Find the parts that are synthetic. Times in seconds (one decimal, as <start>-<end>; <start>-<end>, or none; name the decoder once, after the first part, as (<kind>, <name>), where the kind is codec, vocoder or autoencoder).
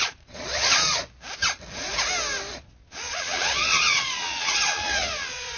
0.0-1.0 (vocoder, Vocos); 2.5-5.6